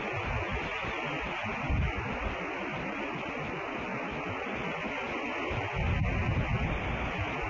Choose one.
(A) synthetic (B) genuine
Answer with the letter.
B